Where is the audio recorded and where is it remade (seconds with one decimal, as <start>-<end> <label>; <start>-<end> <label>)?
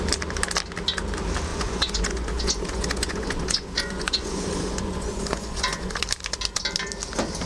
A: 0.0-1.5 recorded; 1.5-6.0 remade; 6.0-7.5 recorded